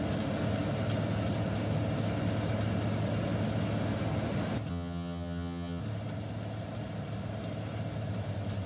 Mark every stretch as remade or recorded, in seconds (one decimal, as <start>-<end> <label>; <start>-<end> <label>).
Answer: 0.0-4.7 recorded; 4.7-5.8 remade; 5.8-8.7 recorded